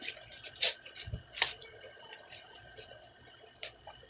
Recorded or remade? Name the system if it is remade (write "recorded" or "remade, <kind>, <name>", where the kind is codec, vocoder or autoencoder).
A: remade, vocoder, BigVGAN v2